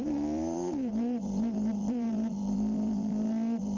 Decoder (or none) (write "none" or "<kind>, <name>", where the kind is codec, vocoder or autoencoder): vocoder, BigVGAN v2